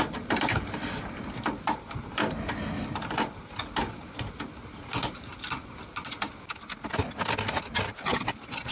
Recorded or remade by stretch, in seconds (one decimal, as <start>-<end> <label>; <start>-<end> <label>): 0.0-8.7 recorded